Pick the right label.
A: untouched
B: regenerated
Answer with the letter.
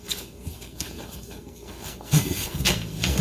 B